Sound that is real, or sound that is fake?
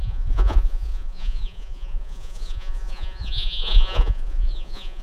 fake